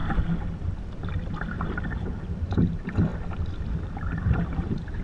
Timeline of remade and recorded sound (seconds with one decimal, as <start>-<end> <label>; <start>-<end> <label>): 0.0-1.6 recorded; 1.6-3.1 remade; 3.1-3.7 recorded; 3.7-5.0 remade